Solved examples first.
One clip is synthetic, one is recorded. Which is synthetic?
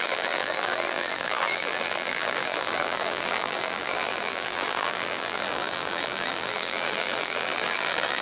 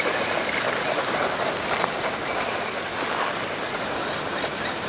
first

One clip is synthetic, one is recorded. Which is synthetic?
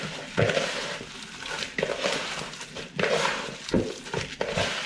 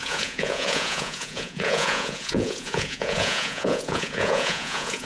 second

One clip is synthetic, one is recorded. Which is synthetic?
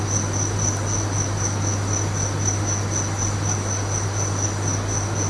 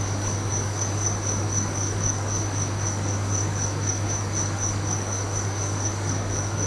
second